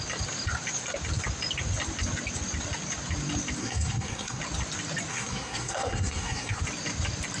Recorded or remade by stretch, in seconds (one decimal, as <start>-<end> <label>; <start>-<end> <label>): 0.0-3.6 recorded; 3.6-4.4 remade; 4.4-5.1 recorded; 5.1-6.6 remade; 6.6-7.4 recorded

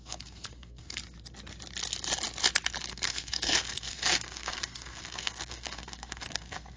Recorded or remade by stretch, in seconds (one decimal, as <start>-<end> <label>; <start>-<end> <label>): 0.0-1.0 remade; 1.0-2.9 recorded; 2.9-6.8 remade

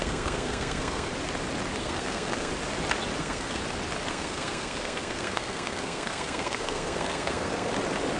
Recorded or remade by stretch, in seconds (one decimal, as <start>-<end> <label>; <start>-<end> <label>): 0.0-1.1 remade; 1.1-1.8 recorded; 1.8-2.5 remade; 2.5-3.2 recorded; 3.2-3.6 remade; 3.6-4.1 recorded; 4.1-7.7 remade; 7.7-8.2 recorded

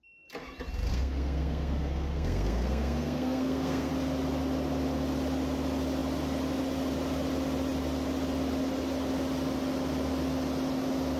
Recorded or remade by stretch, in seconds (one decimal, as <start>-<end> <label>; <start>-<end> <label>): 0.0-0.9 recorded; 0.9-3.9 remade; 3.9-11.2 recorded

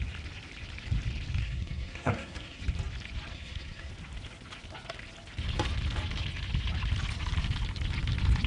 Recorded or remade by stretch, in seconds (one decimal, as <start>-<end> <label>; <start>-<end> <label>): 0.0-1.4 recorded; 1.4-2.6 remade; 2.6-3.3 recorded; 3.3-3.9 remade; 3.9-8.5 recorded

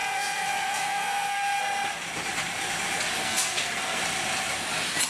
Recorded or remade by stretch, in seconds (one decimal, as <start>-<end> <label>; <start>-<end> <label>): 0.0-1.6 remade; 1.6-3.2 recorded; 3.2-4.0 remade; 4.0-5.1 recorded

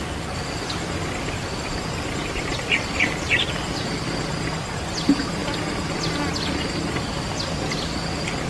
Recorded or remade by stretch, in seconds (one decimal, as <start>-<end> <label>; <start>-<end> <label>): 0.0-8.5 recorded